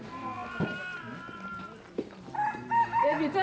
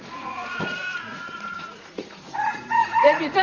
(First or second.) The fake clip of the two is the second